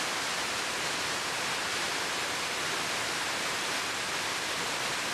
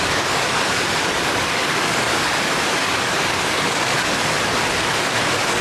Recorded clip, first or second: first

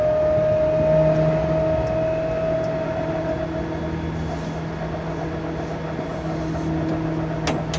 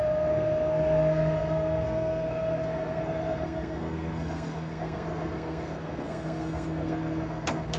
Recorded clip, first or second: first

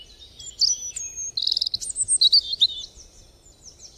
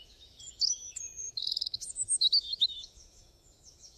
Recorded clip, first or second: first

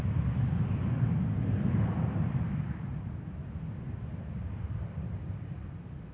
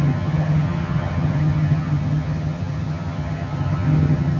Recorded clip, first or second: first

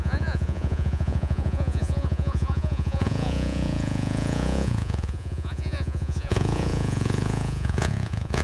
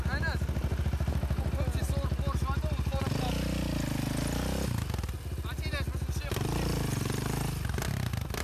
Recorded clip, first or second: second